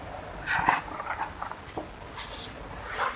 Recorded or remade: recorded